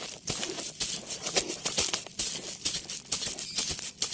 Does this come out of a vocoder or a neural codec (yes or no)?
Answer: no